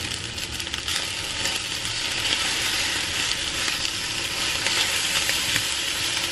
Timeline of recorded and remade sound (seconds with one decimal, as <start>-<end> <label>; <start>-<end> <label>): 0.0-6.3 recorded